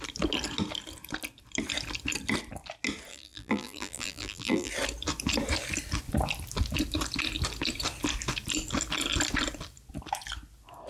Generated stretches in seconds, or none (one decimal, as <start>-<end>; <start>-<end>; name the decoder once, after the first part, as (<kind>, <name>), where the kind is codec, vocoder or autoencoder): 3.1-4.7 (vocoder, BigVGAN v2)